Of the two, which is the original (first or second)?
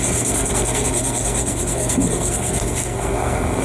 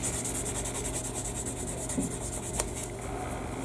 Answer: second